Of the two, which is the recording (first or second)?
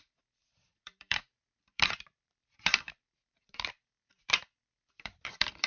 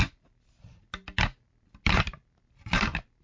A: second